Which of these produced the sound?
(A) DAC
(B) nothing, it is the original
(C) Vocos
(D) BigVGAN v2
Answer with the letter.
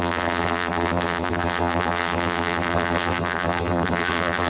D